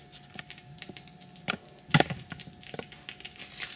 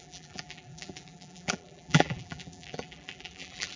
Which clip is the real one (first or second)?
first